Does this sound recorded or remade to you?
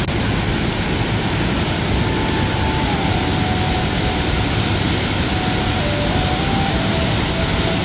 recorded